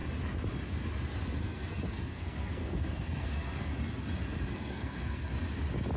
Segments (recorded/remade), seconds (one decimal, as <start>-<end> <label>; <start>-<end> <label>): 0.0-1.4 recorded; 1.4-3.7 remade; 3.7-4.5 recorded; 4.5-5.3 remade; 5.3-6.0 recorded